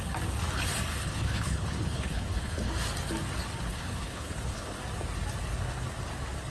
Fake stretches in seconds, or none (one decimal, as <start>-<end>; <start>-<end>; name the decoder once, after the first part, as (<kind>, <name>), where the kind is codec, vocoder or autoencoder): 0.9-2.7 (codec, HILCodec); 3.7-4.8